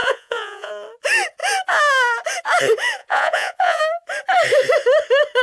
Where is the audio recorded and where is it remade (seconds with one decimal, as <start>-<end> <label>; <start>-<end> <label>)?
0.0-0.7 remade; 0.7-3.0 recorded; 3.0-3.8 remade; 3.8-5.4 recorded